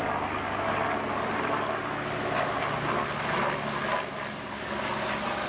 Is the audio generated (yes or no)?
no